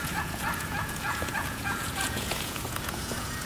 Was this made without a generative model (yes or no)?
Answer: no